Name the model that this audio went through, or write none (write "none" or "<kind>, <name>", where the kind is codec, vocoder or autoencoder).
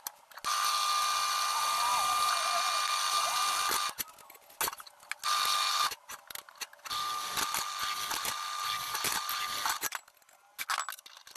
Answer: none